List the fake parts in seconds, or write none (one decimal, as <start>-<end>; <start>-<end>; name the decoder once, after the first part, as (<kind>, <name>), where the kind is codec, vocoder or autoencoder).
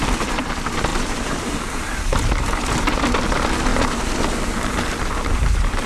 0.9-1.7 (vocoder, BigVGAN v2)